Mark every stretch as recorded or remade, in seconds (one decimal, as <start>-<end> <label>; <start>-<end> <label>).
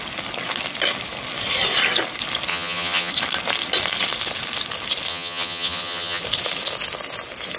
0.0-2.5 recorded; 2.5-3.1 remade; 3.1-5.1 recorded; 5.1-6.2 remade; 6.2-7.6 recorded